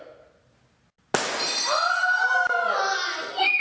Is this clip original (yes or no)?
yes